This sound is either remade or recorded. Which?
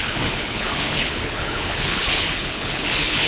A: remade